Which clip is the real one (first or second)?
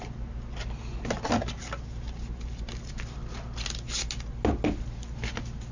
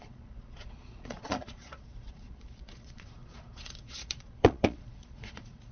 first